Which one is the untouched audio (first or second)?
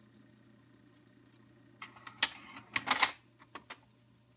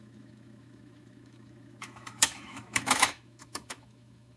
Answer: first